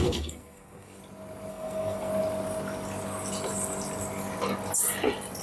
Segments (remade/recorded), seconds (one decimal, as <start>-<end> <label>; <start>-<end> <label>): 0.0-1.0 remade; 1.0-1.5 recorded; 1.5-2.1 remade; 2.1-5.4 recorded